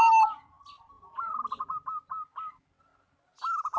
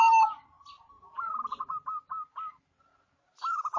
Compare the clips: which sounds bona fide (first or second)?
first